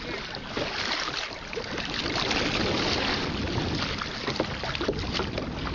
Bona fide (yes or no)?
yes